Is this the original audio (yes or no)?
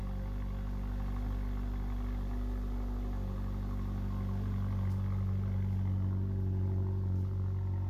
yes